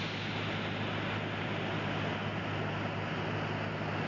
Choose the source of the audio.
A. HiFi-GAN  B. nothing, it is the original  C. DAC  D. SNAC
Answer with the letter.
B